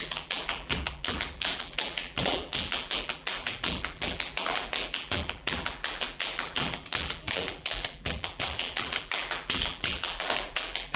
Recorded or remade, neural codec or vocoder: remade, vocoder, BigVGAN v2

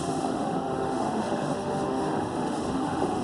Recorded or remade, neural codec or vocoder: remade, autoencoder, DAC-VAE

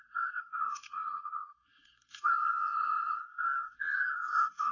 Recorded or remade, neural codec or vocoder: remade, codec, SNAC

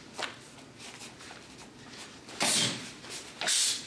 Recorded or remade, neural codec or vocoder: recorded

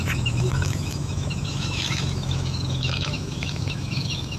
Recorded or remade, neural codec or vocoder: remade, autoencoder, DAC-VAE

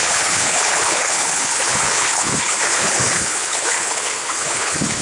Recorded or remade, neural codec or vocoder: remade, codec, HILCodec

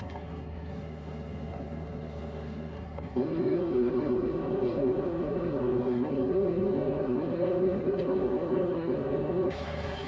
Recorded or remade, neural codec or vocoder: remade, codec, SNAC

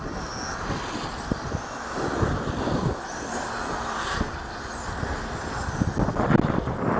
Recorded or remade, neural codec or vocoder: recorded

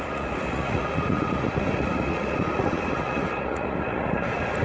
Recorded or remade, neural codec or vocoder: remade, vocoder, Vocos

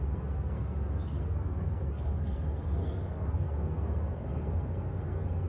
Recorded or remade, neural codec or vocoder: remade, codec, SNAC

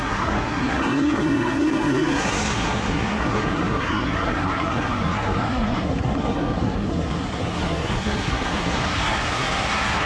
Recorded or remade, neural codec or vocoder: remade, codec, SNAC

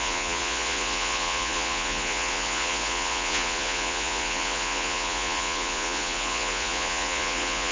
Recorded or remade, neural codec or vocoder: remade, vocoder, Vocos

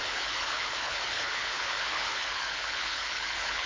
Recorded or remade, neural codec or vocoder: remade, codec, HILCodec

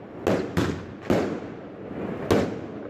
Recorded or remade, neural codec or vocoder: recorded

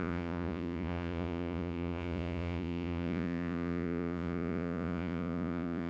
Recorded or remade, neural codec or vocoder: remade, vocoder, Vocos